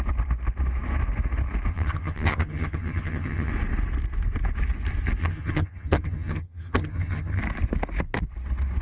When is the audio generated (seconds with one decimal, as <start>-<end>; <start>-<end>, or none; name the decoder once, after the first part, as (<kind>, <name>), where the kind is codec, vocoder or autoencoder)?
1.7-3.5 (vocoder, HiFi-GAN); 5.2-7.4